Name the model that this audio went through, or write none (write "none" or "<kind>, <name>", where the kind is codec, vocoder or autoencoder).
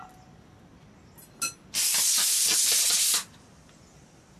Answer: none